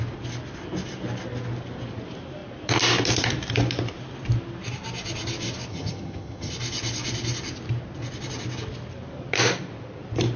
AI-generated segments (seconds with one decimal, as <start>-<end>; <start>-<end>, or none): 5.7-6.5